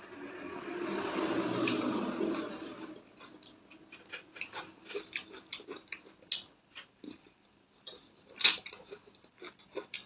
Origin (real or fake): real